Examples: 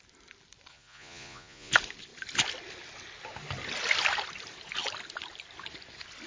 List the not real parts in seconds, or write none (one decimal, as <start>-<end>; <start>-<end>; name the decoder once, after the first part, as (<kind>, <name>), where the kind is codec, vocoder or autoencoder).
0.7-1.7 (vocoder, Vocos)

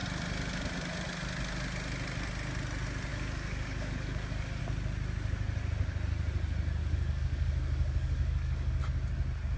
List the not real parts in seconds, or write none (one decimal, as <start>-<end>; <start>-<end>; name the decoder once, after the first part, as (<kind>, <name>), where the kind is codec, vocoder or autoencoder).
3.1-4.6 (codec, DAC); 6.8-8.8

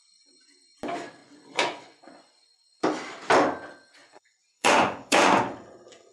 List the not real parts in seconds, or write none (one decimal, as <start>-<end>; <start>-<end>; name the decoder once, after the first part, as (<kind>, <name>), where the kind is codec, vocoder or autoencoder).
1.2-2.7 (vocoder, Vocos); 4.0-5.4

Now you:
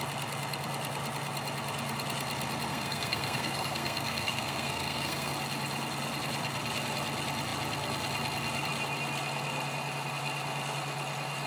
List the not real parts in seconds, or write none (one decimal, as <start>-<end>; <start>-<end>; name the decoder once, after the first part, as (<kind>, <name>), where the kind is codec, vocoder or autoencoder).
2.7-5.3 (codec, SNAC)

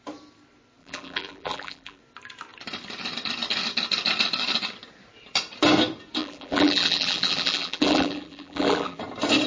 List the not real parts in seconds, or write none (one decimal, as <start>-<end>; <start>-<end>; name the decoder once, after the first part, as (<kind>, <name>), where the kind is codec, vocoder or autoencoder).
0.8-2.0 (vocoder, BigVGAN v2); 6.2-9.0